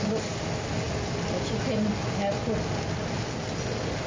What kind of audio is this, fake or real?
real